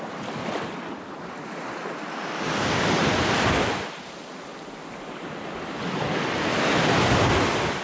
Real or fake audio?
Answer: real